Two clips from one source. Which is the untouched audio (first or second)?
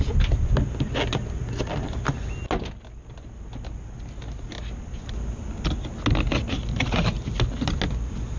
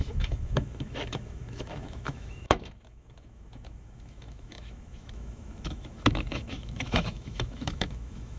first